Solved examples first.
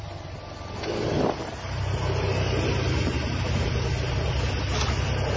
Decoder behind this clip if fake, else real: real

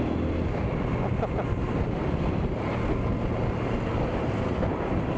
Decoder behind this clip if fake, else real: real